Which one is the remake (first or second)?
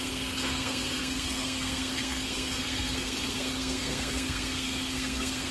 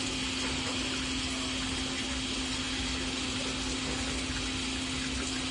first